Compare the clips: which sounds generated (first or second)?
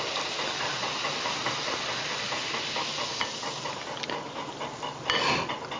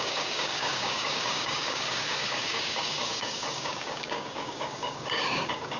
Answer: second